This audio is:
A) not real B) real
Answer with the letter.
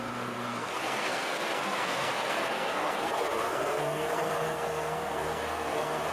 A